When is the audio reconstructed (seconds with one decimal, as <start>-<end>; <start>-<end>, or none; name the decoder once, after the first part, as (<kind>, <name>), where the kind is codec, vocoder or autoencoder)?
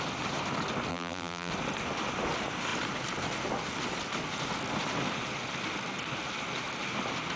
0.9-1.5 (vocoder, BigVGAN v2)